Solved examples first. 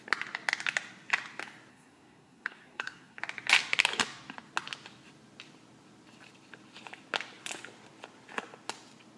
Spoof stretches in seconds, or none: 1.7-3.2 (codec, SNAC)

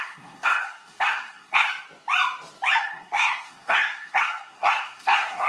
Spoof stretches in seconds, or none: 0.0-1.7 (codec, SNAC); 2.8-5.5

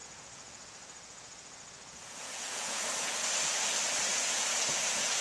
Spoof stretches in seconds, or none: 0.0-3.1 (vocoder, Vocos); 4.1-5.2

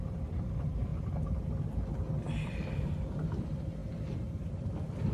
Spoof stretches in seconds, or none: none

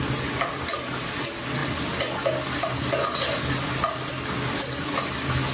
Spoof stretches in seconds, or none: none

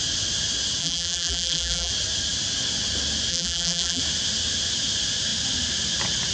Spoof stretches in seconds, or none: 0.8-1.9 (vocoder, BigVGAN v2); 3.3-4.0